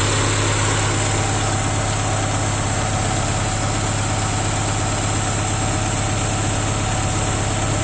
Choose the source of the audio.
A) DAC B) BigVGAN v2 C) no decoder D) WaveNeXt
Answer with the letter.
C